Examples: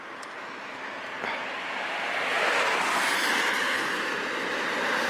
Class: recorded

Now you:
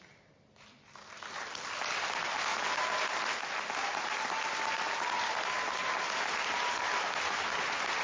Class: recorded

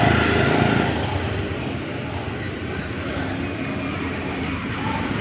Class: recorded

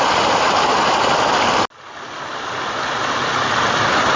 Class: recorded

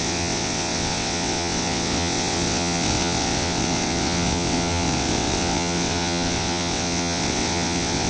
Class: remade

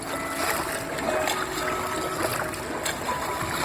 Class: recorded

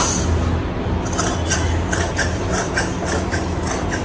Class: recorded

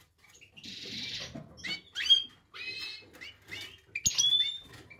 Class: recorded